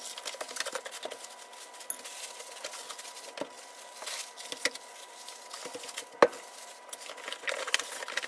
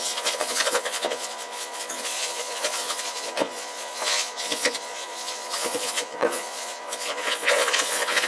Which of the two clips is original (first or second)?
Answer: first